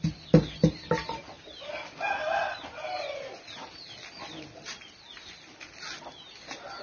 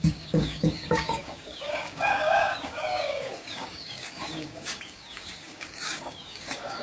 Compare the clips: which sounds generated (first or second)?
second